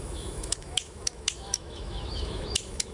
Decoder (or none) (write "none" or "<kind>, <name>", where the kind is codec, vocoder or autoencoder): autoencoder, DAC-VAE